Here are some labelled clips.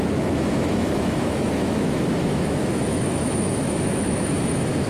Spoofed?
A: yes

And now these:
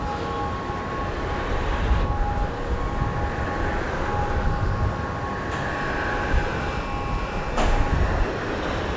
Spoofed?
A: no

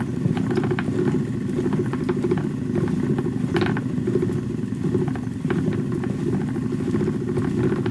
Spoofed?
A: no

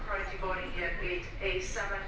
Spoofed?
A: yes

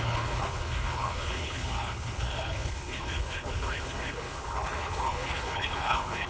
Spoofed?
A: yes